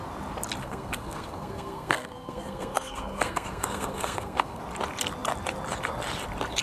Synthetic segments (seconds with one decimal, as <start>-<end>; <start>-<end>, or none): 0.6-4.6